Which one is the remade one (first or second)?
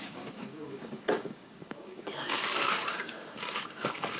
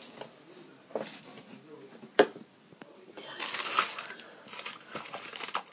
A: first